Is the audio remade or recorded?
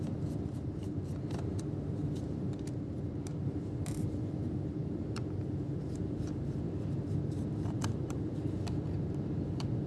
remade